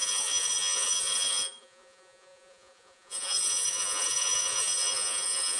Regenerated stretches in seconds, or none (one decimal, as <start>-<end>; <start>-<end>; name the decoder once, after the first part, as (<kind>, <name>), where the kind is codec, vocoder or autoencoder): 0.0-5.6 (vocoder, Vocos)